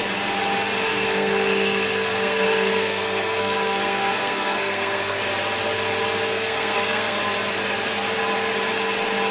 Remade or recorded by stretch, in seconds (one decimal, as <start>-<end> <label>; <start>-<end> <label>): 0.0-0.9 recorded; 0.9-5.2 remade; 5.2-6.3 recorded; 6.3-7.2 remade; 7.2-9.3 recorded

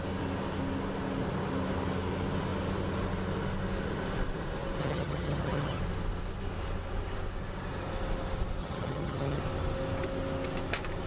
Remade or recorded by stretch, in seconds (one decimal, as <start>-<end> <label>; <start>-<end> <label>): 0.0-4.8 recorded; 4.8-5.8 remade; 5.8-8.6 recorded; 8.6-9.4 remade; 9.4-11.1 recorded

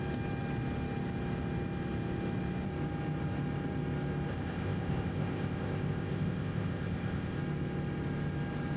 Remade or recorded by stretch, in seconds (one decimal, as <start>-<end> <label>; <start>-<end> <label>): 0.0-4.3 recorded; 4.3-7.4 remade; 7.4-8.8 recorded

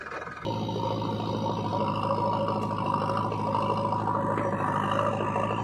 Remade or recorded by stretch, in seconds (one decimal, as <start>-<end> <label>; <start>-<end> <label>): 0.0-5.6 recorded

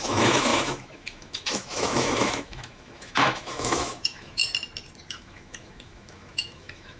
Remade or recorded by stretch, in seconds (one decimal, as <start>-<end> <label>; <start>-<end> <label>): 0.0-4.4 remade; 4.4-5.1 recorded; 5.1-7.0 remade

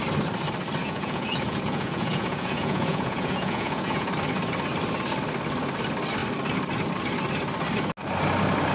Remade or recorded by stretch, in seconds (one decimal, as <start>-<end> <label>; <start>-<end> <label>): 0.0-0.8 recorded; 0.8-4.1 remade; 4.1-8.7 recorded

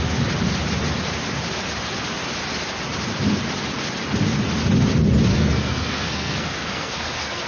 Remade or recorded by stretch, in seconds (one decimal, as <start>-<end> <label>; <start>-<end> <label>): 0.0-5.3 recorded; 5.3-7.5 remade

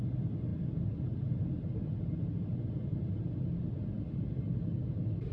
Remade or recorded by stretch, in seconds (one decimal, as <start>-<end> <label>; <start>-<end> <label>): 0.0-0.5 recorded; 0.5-1.2 remade; 1.2-2.9 recorded; 2.9-3.6 remade; 3.6-5.3 recorded